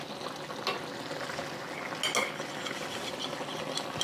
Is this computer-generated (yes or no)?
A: no